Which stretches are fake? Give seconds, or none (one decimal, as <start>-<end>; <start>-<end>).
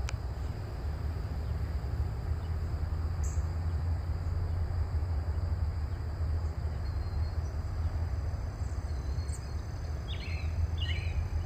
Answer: 8.0-8.6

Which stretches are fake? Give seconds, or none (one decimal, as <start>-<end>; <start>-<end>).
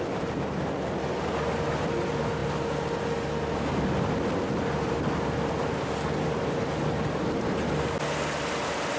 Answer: none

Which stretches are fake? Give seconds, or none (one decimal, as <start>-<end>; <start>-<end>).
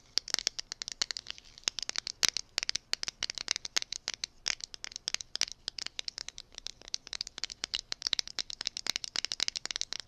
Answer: 6.2-8.4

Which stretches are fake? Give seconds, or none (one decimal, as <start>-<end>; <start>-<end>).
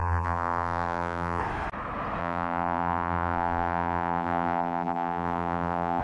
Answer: 0.0-1.4; 2.2-6.0